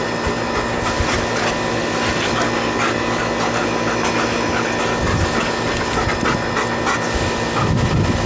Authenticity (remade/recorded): recorded